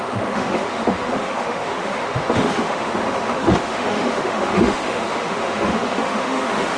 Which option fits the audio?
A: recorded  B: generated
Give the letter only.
B